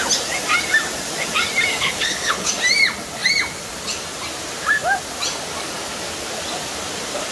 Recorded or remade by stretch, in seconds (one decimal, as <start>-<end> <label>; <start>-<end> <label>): 0.0-1.7 recorded; 1.7-2.5 remade; 2.5-7.3 recorded